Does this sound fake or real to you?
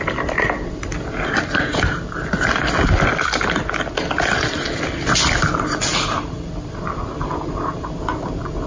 real